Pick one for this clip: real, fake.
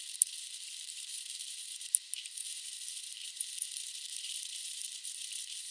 fake